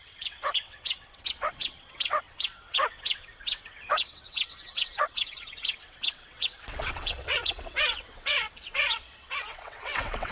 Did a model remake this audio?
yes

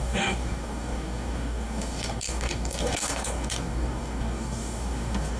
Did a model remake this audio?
yes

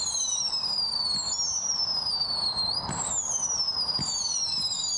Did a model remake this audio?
no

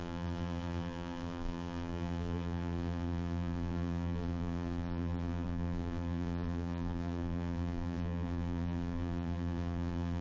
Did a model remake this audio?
yes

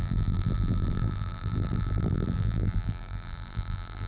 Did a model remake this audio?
yes